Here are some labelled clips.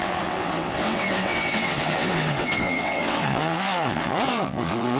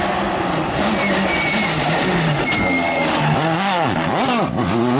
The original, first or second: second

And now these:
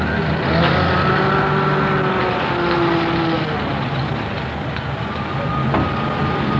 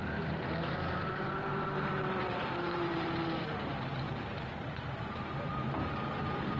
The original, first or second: first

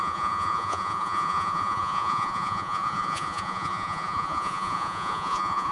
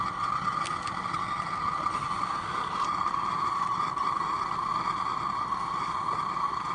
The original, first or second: second